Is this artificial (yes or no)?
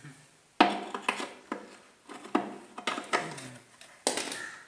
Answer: no